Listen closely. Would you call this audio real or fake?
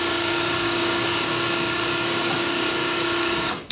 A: fake